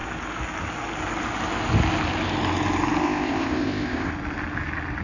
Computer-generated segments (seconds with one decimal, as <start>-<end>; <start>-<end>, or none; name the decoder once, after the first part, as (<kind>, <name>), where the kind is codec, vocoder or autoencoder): 3.0-4.1 (codec, ZipCodec)